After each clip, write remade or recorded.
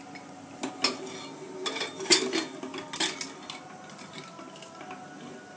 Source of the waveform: recorded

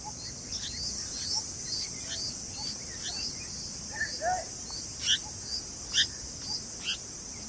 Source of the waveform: recorded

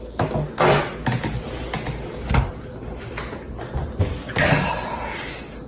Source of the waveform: recorded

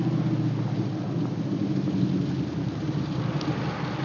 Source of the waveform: recorded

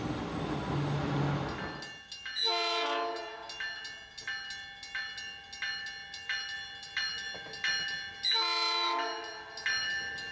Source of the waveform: recorded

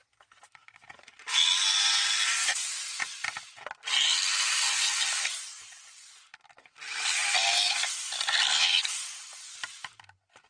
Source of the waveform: recorded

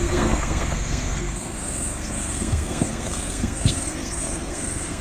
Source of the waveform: remade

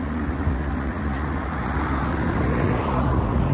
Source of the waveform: remade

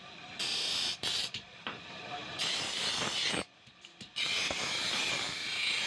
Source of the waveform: recorded